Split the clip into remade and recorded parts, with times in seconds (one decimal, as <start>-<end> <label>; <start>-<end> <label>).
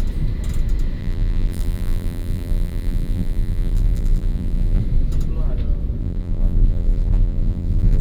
0.0-1.0 recorded; 1.0-4.8 remade; 4.8-6.0 recorded; 6.0-8.0 remade